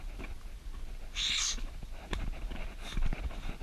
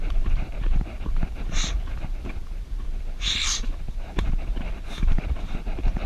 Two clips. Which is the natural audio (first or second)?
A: first